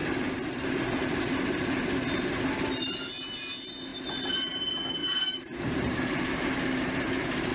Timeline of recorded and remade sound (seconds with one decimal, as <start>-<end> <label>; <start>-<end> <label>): 0.0-0.5 remade; 0.5-5.0 recorded; 5.0-7.5 remade